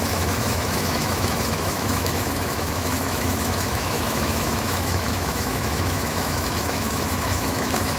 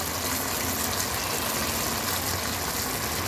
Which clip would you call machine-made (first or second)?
first